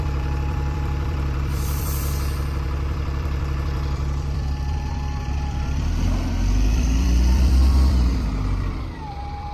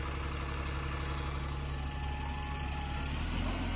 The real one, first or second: second